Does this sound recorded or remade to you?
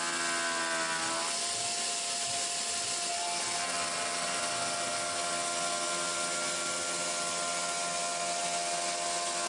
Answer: recorded